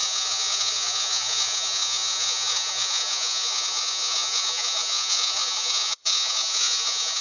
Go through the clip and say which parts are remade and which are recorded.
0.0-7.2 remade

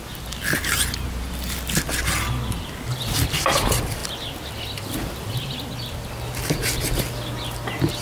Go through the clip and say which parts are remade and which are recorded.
0.0-8.0 recorded

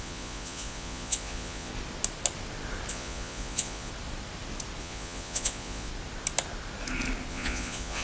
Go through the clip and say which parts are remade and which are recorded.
0.0-1.7 remade; 1.7-2.9 recorded; 2.9-3.9 remade; 3.9-4.8 recorded; 4.8-5.9 remade; 5.9-7.3 recorded; 7.3-8.0 remade

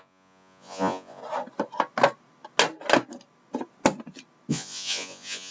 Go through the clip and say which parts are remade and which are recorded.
0.0-1.2 remade; 1.2-4.5 recorded; 4.5-5.5 remade